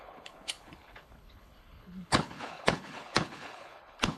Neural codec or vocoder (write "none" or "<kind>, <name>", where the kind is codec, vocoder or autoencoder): codec, HILCodec